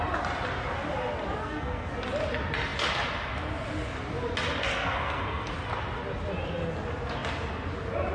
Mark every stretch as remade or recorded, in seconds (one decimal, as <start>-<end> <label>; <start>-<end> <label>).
0.0-1.4 recorded; 1.4-1.9 remade; 1.9-4.7 recorded; 4.7-5.5 remade; 5.5-8.1 recorded